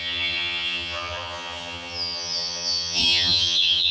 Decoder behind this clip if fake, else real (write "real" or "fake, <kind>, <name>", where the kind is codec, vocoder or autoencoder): fake, vocoder, HiFi-GAN